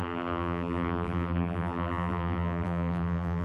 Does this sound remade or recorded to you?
remade